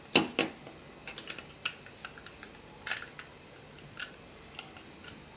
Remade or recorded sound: recorded